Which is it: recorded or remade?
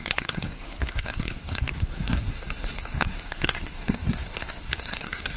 remade